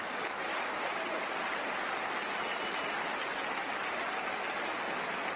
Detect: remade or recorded recorded